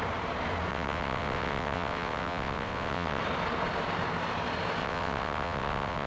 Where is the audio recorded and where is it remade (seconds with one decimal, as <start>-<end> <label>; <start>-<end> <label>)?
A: 0.0-0.7 recorded; 0.7-3.2 remade; 3.2-4.8 recorded; 4.8-6.1 remade